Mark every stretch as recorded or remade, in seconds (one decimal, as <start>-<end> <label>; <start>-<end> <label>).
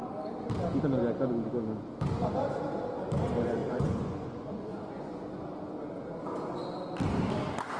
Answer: 0.0-3.6 recorded; 3.6-5.4 remade; 5.4-7.8 recorded